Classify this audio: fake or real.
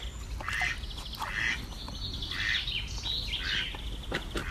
real